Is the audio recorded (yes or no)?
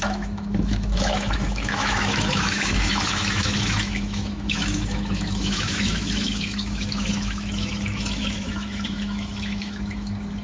no